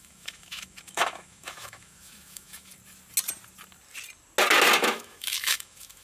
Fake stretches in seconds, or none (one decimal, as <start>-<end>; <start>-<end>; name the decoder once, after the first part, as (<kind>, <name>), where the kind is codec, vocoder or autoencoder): 0.0-2.7 (autoencoder, DAC-VAE); 4.8-6.0